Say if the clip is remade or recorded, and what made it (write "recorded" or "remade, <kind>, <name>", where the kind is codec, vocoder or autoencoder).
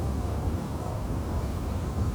remade, codec, DAC